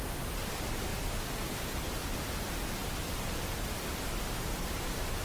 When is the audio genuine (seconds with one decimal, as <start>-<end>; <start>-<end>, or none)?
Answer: 0.0-5.2